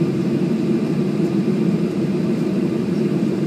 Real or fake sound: fake